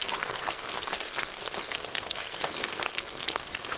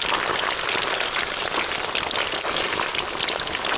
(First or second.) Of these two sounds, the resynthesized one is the first